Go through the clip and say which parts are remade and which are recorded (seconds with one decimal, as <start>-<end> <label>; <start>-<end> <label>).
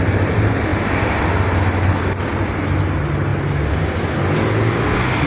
0.0-0.7 recorded; 0.7-1.2 remade; 1.2-5.3 recorded